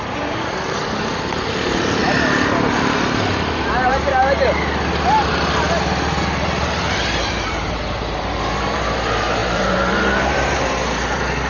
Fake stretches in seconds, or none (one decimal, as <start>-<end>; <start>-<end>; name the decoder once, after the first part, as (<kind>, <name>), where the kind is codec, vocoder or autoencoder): 0.0-2.0 (vocoder, BigVGAN v2); 2.7-4.2; 7.0-11.5